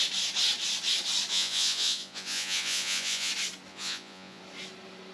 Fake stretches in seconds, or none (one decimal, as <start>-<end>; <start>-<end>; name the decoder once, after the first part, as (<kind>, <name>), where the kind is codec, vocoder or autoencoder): 1.3-3.3 (vocoder, Vocos); 3.7-4.4